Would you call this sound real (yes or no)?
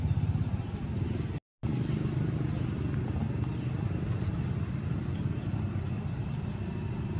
yes